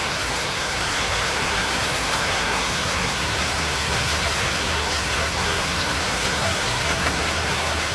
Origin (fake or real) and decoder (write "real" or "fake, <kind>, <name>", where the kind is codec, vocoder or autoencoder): fake, codec, SNAC